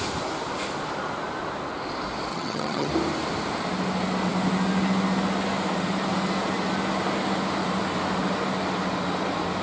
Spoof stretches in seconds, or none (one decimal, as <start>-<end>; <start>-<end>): 2.3-2.9